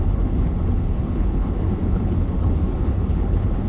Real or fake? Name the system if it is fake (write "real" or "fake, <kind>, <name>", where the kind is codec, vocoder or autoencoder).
fake, codec, HILCodec